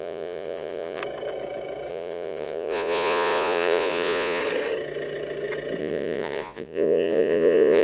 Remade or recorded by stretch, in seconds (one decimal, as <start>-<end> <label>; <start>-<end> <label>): 0.0-1.0 remade; 1.0-1.9 recorded; 1.9-4.4 remade; 4.4-5.8 recorded; 5.8-7.8 remade

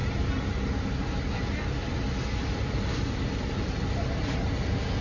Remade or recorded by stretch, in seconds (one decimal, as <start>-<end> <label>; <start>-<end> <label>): 0.0-5.0 recorded

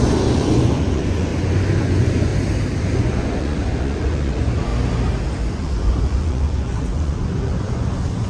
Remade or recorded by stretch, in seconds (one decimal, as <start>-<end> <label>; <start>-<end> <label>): 0.0-1.3 remade; 1.3-1.8 recorded; 1.8-2.3 remade; 2.3-2.8 recorded; 2.8-4.7 remade; 4.7-5.4 recorded; 5.4-8.3 remade